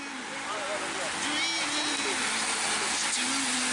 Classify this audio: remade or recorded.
recorded